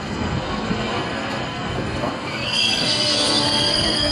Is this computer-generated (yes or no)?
yes